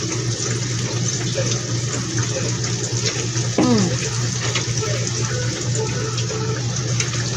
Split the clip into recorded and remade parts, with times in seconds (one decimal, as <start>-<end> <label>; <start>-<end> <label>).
0.0-2.2 recorded; 2.2-6.6 remade; 6.6-7.4 recorded